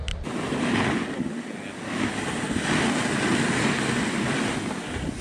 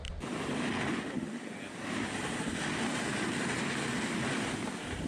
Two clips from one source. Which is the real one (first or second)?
first